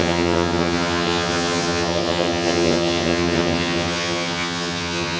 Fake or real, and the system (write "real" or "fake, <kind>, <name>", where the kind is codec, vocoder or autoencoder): fake, vocoder, HiFi-GAN